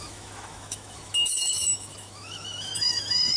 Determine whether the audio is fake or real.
fake